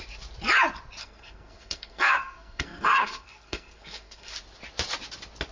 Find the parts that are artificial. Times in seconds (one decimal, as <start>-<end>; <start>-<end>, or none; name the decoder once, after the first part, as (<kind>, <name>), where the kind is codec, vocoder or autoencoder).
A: 1.0-4.3 (codec, SNAC)